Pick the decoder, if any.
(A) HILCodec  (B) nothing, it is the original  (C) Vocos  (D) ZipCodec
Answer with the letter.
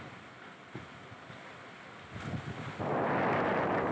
B